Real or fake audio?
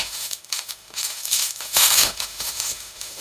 fake